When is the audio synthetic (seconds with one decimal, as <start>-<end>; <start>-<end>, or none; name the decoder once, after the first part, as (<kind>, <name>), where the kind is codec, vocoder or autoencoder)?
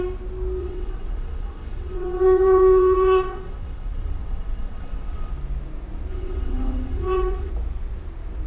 0.6-5.3 (vocoder, WaveNeXt); 6.1-7.5